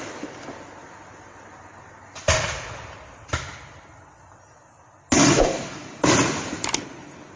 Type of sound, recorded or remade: recorded